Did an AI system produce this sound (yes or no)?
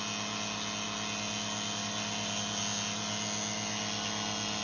no